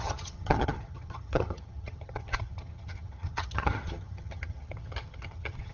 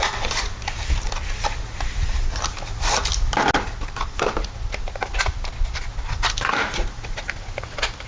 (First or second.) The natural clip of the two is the second